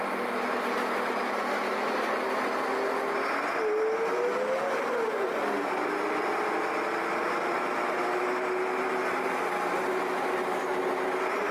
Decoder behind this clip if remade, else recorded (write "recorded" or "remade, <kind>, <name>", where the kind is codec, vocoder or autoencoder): recorded